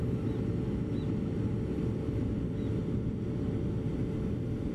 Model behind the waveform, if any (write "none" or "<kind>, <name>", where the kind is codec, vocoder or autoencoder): none